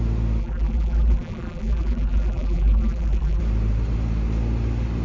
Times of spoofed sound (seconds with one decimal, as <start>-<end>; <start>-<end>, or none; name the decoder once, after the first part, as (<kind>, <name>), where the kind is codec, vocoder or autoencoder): 0.4-3.4 (vocoder, BigVGAN v2)